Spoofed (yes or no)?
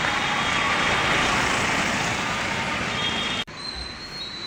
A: no